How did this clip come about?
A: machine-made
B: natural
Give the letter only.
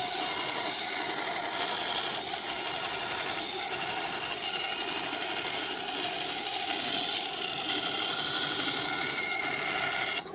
B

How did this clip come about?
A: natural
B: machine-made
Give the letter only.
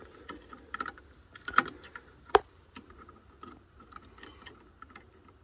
A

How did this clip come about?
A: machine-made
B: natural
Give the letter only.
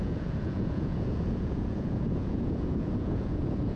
A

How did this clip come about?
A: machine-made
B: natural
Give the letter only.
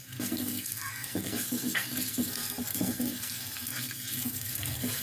A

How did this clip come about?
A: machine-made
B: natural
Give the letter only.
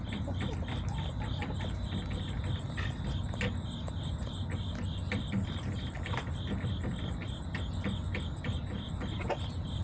B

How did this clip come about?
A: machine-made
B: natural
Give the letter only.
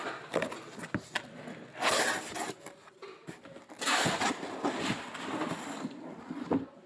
B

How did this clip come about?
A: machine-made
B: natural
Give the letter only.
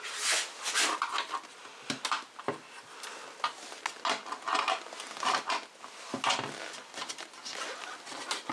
B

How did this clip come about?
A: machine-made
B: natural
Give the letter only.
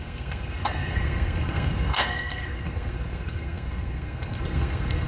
A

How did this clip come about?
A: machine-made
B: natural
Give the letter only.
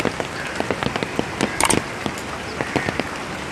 B